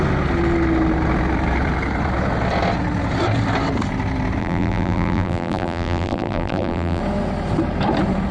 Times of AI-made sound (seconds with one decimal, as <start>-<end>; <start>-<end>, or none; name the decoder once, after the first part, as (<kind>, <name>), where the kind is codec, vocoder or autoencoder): 4.4-7.0 (vocoder, BigVGAN v2)

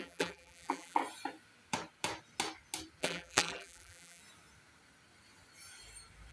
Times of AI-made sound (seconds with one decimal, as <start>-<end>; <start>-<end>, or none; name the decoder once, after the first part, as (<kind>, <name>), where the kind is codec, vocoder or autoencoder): 0.0-1.0 (vocoder, BigVGAN v2); 3.0-4.2

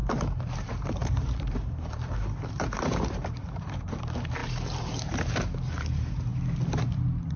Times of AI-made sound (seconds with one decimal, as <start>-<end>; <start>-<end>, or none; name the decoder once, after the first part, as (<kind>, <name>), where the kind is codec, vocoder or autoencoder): 0.0-6.3 (vocoder, BigVGAN v2)

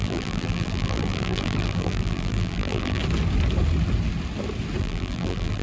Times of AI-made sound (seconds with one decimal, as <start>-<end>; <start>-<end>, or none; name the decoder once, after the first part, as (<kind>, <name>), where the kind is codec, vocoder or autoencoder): 0.0-3.0 (vocoder, BigVGAN v2); 4.8-5.6

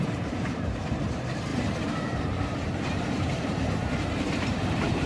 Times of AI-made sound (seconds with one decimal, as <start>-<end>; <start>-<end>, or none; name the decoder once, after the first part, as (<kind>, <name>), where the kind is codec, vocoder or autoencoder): 0.0-5.1 (vocoder, BigVGAN v2)

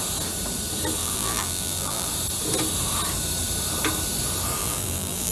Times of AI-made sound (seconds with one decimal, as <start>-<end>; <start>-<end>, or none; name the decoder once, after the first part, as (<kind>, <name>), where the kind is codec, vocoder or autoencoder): 1.0-2.1 (vocoder, BigVGAN v2); 4.6-5.3